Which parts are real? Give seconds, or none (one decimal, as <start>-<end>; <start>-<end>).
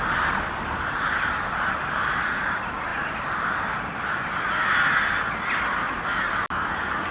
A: 0.0-7.1